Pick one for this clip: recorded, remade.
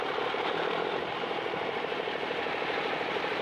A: remade